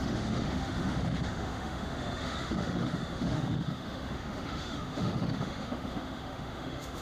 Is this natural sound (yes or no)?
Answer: no